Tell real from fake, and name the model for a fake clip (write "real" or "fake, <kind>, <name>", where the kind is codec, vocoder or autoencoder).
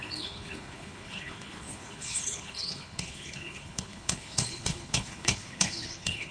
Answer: fake, codec, HILCodec